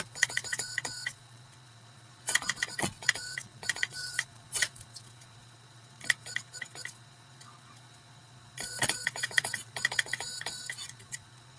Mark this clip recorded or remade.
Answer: remade